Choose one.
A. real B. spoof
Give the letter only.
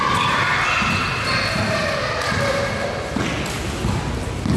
A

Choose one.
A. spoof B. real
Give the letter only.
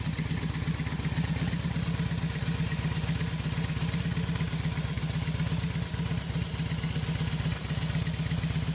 B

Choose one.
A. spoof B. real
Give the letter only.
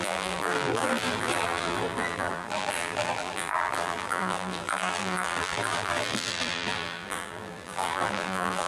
A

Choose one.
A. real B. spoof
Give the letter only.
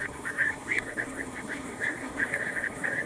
B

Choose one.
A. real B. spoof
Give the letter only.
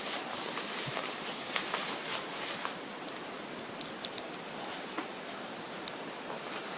A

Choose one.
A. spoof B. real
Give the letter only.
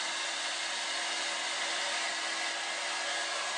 B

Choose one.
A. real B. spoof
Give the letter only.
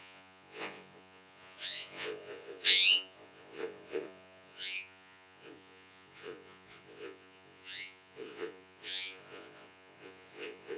B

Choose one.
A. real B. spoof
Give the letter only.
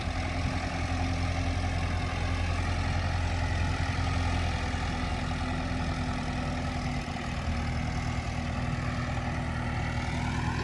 A